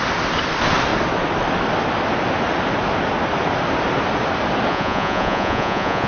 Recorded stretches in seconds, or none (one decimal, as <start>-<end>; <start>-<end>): 0.0-4.7